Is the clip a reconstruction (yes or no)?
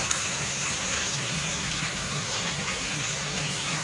yes